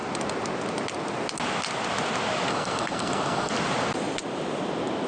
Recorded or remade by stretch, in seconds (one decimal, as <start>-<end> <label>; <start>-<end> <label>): 0.0-2.5 recorded; 2.5-3.5 remade; 3.5-5.1 recorded